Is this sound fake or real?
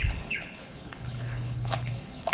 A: fake